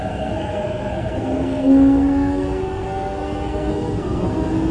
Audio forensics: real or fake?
fake